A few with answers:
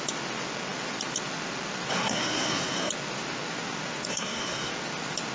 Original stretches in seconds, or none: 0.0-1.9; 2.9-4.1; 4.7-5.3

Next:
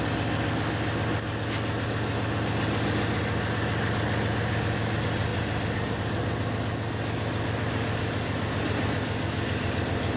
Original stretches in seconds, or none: 0.0-10.2

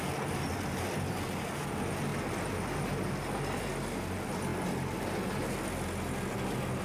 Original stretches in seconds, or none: 0.0-6.8